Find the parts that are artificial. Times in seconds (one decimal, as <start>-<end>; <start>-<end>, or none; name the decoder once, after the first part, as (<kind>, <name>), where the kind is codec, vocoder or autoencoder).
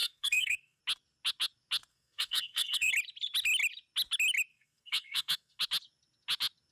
0.0-0.8 (codec, SNAC); 1.9-2.9; 4.5-5.6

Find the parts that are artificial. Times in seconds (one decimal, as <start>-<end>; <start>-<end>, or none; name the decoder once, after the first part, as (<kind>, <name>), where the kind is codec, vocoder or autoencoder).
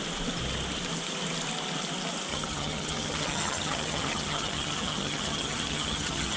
2.3-6.4 (vocoder, HiFi-GAN)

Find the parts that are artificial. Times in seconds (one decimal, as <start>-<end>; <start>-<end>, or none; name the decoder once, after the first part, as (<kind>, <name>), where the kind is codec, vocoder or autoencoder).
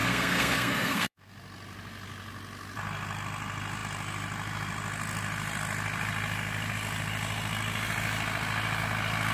0.0-1.3 (codec, SNAC)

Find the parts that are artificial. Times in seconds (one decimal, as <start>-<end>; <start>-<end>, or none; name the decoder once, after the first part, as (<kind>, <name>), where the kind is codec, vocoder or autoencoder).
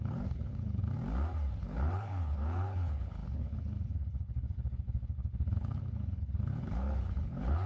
0.0-0.8 (codec, HILCodec); 1.6-7.7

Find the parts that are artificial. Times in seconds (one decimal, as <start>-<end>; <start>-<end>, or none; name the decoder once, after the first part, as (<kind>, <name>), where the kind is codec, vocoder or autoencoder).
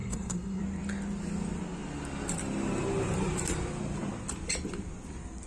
0.0-0.6 (codec, SNAC)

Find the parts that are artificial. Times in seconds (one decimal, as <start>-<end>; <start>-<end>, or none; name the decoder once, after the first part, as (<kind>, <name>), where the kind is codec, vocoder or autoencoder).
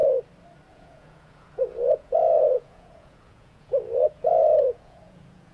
0.7-5.5 (vocoder, Vocos)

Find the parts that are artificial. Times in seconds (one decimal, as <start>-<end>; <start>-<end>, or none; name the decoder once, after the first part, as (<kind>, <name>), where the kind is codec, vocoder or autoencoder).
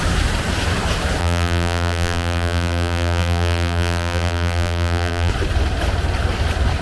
1.2-5.3 (vocoder, BigVGAN v2)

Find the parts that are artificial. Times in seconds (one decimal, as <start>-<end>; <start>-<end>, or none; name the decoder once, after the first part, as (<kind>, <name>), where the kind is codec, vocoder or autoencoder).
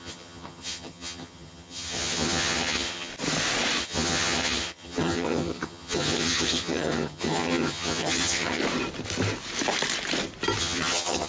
0.0-3.1 (vocoder, HiFi-GAN); 3.8-8.6; 10.6-11.3